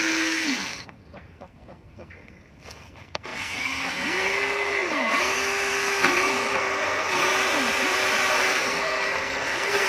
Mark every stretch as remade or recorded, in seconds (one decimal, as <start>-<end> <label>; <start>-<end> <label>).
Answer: 0.0-7.3 remade; 7.3-8.4 recorded; 8.4-9.9 remade